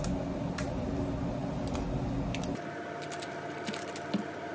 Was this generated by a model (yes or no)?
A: no